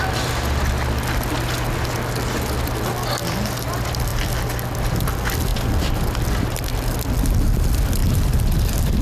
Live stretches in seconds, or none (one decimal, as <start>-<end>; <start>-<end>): 0.0-9.0